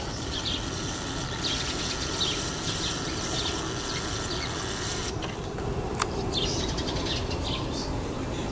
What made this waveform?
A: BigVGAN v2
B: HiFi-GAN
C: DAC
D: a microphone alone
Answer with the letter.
D